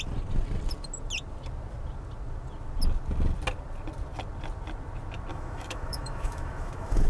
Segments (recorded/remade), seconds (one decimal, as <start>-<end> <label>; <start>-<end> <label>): 0.0-5.3 recorded; 5.3-7.1 remade